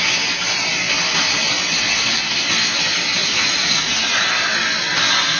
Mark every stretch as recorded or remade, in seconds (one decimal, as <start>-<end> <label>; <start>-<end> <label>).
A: 0.0-3.2 recorded; 3.2-4.2 remade; 4.2-5.4 recorded